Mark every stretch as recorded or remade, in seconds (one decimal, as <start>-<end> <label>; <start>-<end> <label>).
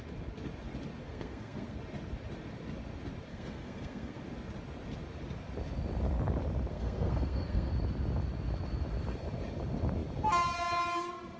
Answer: 0.0-1.0 recorded; 1.0-1.8 remade; 1.8-3.3 recorded; 3.3-4.2 remade; 4.2-6.7 recorded; 6.7-7.7 remade; 7.7-11.4 recorded